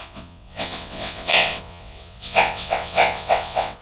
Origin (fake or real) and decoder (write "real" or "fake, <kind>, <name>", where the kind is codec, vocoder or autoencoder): fake, vocoder, WaveNeXt